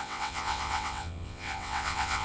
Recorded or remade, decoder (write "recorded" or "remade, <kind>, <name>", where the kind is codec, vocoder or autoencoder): remade, vocoder, WaveNeXt